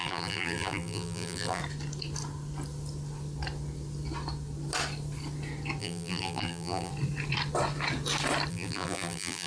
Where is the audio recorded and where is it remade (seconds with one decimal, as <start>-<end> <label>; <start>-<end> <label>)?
0.0-1.6 remade; 1.6-5.8 recorded; 5.8-6.9 remade; 6.9-8.5 recorded; 8.5-9.5 remade